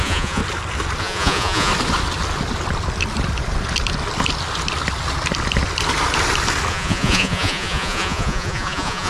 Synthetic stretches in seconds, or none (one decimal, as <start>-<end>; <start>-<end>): 0.0-0.4; 1.0-1.7; 6.7-9.1